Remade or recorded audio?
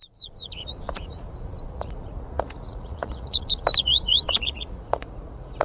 remade